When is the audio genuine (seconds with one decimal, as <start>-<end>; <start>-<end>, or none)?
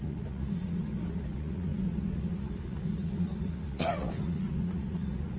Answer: none